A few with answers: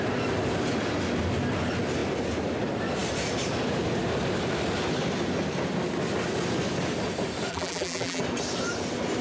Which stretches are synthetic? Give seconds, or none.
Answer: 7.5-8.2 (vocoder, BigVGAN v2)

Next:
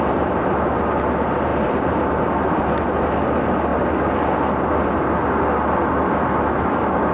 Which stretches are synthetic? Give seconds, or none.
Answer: none

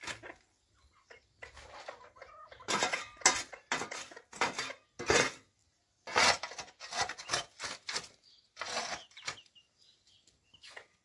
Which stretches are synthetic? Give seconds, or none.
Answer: none

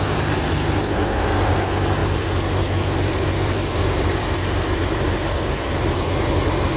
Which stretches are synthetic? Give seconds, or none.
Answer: 2.0-6.1 (vocoder, BigVGAN v2)

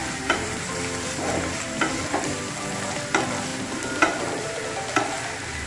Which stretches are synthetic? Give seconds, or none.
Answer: 0.0-2.4 (vocoder, BigVGAN v2); 3.5-4.6

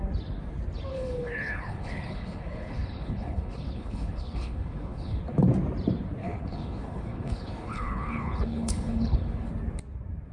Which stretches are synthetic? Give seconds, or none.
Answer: 0.9-5.2 (codec, HILCodec); 6.2-9.5